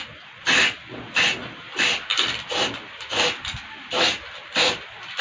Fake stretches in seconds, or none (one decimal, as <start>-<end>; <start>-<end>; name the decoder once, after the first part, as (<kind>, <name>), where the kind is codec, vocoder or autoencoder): none

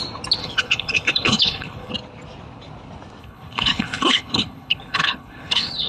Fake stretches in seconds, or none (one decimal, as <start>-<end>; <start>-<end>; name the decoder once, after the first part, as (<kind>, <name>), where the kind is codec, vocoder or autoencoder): 0.4-1.9 (codec, HILCodec); 3.2-5.9

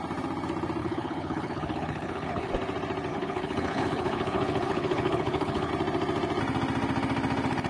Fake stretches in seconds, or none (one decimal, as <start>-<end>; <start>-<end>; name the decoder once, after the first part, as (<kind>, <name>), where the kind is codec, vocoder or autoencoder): 0.8-2.5 (codec, HILCodec); 3.1-5.7

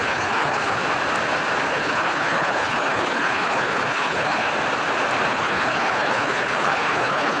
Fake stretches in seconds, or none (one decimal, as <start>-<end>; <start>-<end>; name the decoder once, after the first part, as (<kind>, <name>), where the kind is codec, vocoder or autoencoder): 0.0-0.8 (codec, HILCodec); 1.7-4.5; 5.3-7.4